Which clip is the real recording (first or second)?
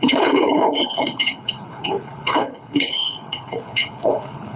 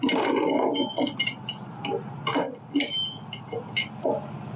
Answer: second